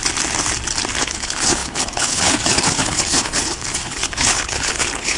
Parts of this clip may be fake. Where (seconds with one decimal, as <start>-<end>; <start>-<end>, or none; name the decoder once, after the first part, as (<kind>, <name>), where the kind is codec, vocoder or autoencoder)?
1.0-5.2 (codec, HILCodec)